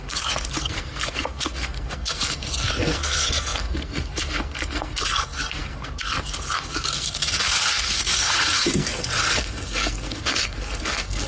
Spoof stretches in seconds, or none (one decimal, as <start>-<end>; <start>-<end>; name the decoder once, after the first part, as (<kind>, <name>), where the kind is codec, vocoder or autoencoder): 0.0-11.3 (codec, SNAC)